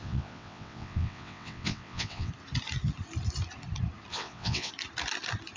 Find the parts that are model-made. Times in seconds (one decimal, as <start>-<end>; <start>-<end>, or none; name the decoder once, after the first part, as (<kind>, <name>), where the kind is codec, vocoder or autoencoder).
0.0-2.3 (vocoder, WaveNeXt); 4.1-4.7